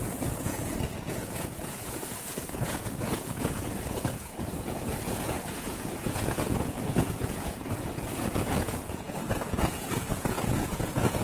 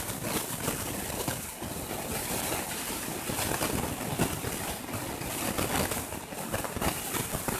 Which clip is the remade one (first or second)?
first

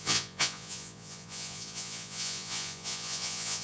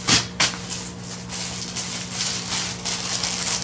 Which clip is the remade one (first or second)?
first